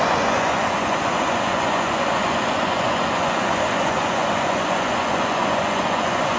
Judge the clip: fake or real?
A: fake